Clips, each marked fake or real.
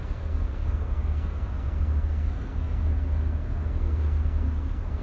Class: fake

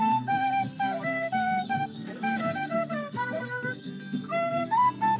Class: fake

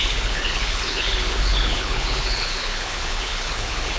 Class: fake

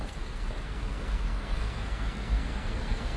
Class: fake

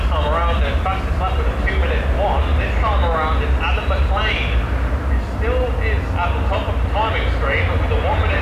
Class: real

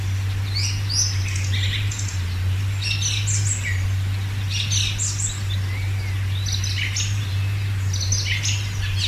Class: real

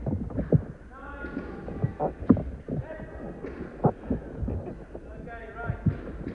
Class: real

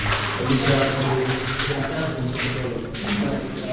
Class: real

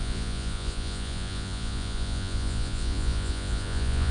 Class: fake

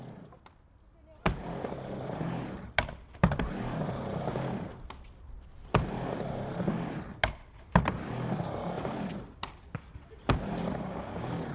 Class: real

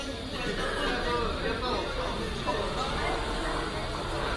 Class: real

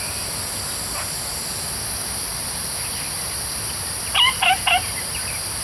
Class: real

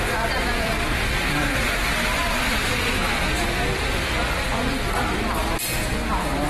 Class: real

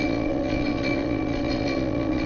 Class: fake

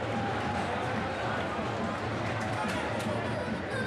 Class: real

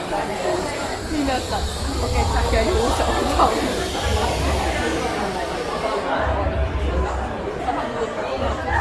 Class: real